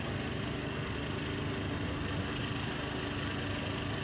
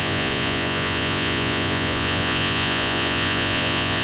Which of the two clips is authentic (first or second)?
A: first